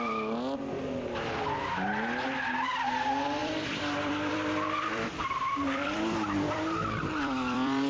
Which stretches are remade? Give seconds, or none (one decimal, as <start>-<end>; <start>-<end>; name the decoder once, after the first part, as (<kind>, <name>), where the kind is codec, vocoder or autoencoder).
3.4-7.9 (vocoder, BigVGAN v2)